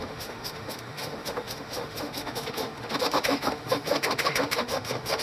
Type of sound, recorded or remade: remade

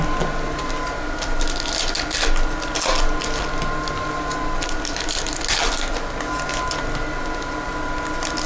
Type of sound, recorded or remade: recorded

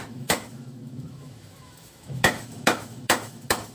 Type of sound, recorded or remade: remade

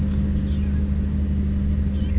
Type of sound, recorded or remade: recorded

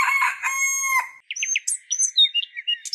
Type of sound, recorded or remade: recorded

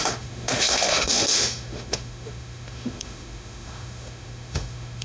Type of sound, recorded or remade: remade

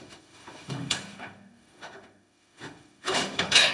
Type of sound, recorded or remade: remade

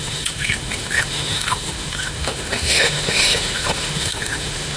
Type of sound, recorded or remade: remade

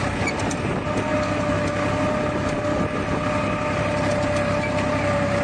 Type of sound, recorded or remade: recorded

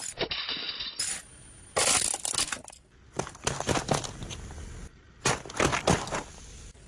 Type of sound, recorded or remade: recorded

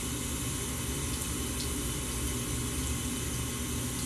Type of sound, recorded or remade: recorded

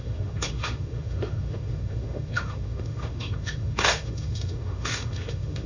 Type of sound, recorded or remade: remade